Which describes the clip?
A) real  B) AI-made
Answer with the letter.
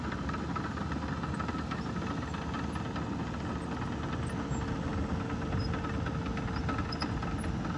A